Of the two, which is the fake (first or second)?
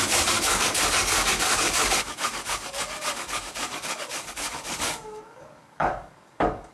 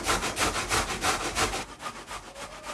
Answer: first